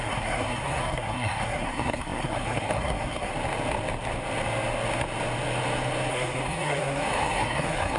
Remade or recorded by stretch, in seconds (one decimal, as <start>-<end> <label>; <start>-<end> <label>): 0.0-3.3 remade; 3.3-6.1 recorded; 6.1-8.0 remade